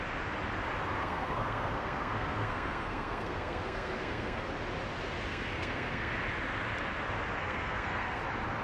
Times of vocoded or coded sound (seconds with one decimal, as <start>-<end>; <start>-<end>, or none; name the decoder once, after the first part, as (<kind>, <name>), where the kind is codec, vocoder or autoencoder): 1.0-4.5 (codec, SNAC); 5.3-6.1; 7.4-8.2